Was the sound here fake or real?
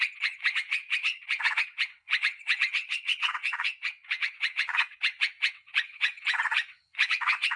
fake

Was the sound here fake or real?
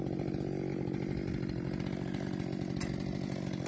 real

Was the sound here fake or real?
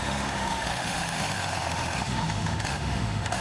fake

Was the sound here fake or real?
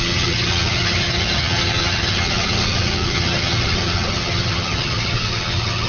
fake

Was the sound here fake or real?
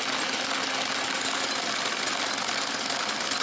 real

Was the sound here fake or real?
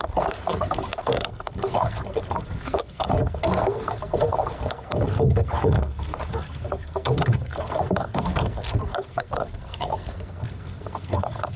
fake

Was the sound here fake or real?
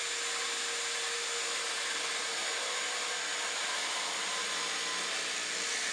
real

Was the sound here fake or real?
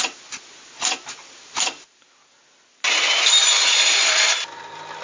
real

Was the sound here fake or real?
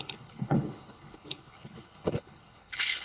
fake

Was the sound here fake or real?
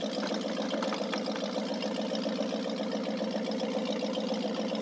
real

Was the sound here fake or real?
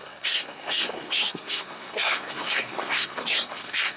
fake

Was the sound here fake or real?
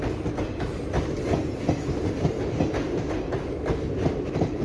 real